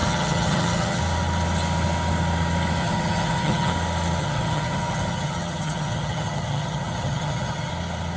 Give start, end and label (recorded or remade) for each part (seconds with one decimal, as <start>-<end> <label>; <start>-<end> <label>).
0.0-1.0 remade; 1.0-2.8 recorded; 2.8-3.7 remade; 3.7-4.2 recorded; 4.2-7.7 remade; 7.7-8.2 recorded